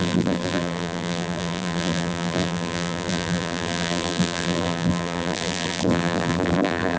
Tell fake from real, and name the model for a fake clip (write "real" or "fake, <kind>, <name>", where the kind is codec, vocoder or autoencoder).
fake, vocoder, BigVGAN v2